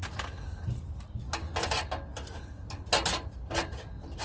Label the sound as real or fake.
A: real